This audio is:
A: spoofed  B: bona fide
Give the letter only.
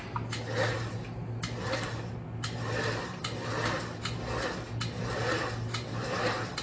B